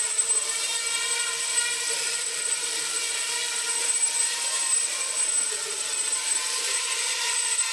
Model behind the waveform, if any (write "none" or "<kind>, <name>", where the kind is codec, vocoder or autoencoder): vocoder, BigVGAN v2